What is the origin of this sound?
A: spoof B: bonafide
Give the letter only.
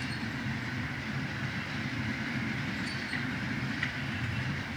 B